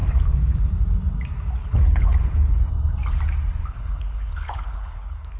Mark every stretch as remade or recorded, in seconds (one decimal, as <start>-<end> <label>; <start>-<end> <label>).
0.0-0.7 remade; 0.7-1.6 recorded; 1.6-2.6 remade; 2.6-3.6 recorded; 3.6-5.4 remade

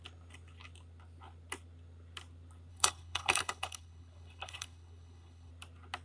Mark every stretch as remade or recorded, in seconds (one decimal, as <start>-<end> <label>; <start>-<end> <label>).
0.0-2.7 recorded; 2.7-5.5 remade; 5.5-6.0 recorded

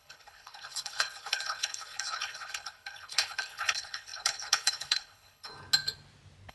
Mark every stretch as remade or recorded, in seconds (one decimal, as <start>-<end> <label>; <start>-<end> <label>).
0.0-5.5 remade; 5.5-6.5 recorded

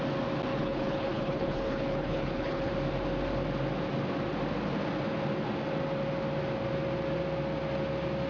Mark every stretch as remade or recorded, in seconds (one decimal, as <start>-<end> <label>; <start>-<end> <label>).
0.0-0.5 recorded; 0.5-2.7 remade; 2.7-8.3 recorded